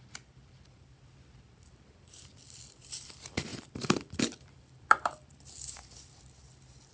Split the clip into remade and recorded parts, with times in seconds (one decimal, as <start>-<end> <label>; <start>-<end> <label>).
0.0-6.9 remade